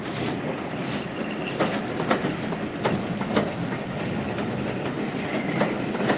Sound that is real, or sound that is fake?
real